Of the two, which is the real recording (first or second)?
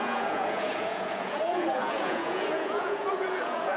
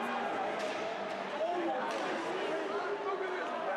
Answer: second